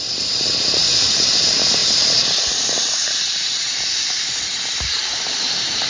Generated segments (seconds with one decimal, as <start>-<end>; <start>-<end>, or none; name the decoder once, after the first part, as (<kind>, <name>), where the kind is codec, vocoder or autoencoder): 0.0-5.9 (vocoder, BigVGAN v2)

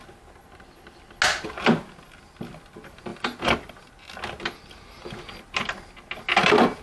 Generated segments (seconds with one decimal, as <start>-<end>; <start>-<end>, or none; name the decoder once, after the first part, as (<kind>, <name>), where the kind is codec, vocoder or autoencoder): none

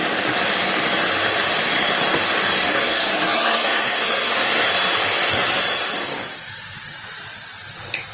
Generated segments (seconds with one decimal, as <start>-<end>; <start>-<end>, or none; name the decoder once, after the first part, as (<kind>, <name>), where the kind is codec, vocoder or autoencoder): 2.7-4.7 (codec, SNAC)

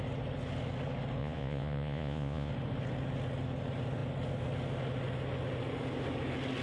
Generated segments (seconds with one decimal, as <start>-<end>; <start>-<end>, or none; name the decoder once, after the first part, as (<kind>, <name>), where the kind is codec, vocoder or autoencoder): 1.2-2.5 (vocoder, Vocos)

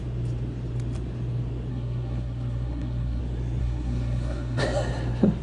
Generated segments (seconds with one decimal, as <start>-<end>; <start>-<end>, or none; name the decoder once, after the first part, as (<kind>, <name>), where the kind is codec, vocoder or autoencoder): 1.7-3.2 (codec, SNAC); 3.6-4.6

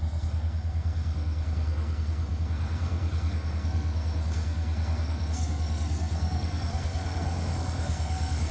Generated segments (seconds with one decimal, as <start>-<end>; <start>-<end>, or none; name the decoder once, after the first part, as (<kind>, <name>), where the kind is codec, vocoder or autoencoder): 0.0-8.5 (codec, SNAC)